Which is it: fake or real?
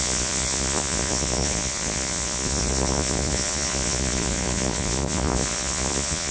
fake